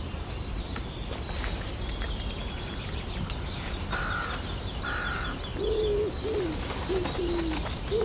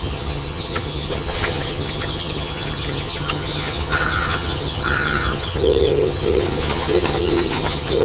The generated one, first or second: second